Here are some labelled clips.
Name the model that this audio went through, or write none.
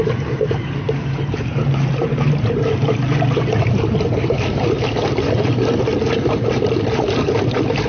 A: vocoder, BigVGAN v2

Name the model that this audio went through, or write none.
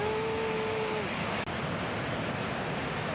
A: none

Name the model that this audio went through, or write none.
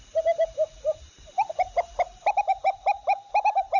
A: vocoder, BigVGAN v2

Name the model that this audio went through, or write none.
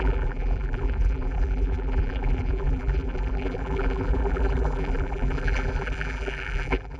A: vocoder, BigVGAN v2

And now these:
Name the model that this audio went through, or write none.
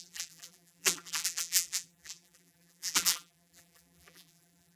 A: vocoder, BigVGAN v2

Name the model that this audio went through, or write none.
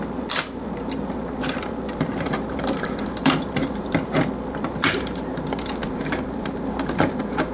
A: vocoder, BigVGAN v2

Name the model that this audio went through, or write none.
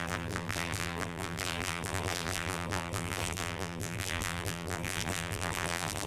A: vocoder, BigVGAN v2